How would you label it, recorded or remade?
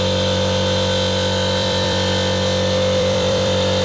remade